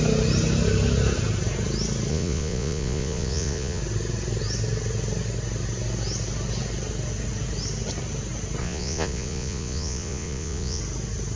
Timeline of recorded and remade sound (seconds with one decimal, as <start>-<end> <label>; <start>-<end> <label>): 0.0-2.1 recorded; 2.1-3.8 remade; 3.8-8.6 recorded; 8.6-10.8 remade; 10.8-11.4 recorded